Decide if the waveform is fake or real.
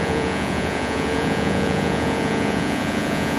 fake